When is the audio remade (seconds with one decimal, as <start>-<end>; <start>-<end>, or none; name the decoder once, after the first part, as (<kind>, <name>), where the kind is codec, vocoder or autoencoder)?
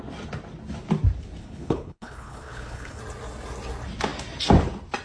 1.4-3.0 (codec, HILCodec)